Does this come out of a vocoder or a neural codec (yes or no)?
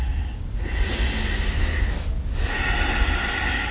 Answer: no